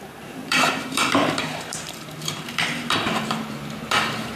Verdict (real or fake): fake